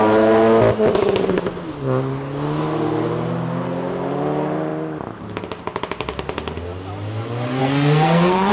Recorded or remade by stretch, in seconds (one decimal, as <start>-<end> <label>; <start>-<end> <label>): 0.0-7.6 recorded; 7.6-8.5 remade